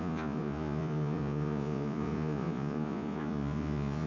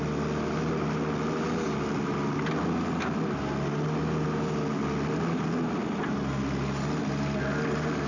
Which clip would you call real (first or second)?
second